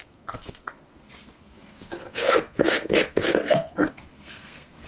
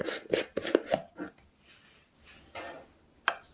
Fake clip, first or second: first